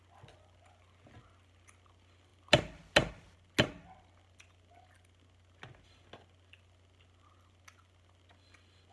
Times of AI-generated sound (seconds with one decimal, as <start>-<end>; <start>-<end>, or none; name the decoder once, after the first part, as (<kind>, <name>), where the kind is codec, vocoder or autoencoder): none